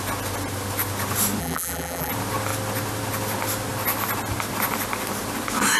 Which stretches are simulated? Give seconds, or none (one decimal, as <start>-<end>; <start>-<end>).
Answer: 1.4-2.1

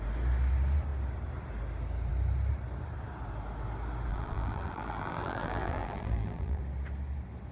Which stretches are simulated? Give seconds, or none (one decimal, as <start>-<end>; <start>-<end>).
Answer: 4.1-6.6

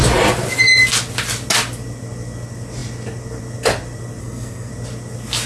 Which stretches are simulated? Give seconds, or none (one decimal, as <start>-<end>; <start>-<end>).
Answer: 4.2-4.7

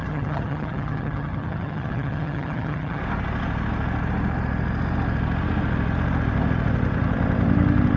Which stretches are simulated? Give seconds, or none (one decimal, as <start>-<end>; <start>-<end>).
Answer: 0.0-3.0

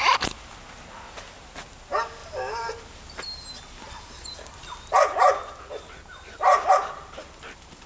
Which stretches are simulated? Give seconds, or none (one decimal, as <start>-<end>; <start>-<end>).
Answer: none

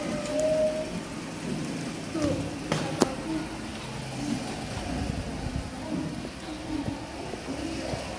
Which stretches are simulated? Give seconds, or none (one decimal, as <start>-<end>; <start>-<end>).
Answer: none

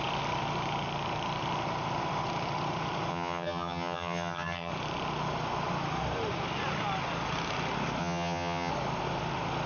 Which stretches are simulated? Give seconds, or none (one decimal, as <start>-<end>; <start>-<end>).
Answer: 3.1-4.7; 8.0-8.7

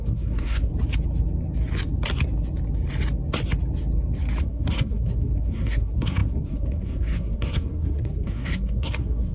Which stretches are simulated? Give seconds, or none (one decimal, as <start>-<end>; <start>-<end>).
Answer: 0.0-0.7; 4.4-9.3